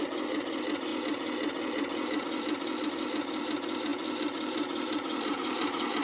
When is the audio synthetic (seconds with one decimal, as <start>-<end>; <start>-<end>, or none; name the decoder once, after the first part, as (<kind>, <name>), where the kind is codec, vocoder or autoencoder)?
0.0-6.0 (vocoder, BigVGAN v2)